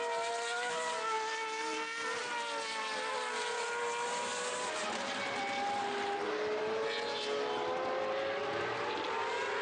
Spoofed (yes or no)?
no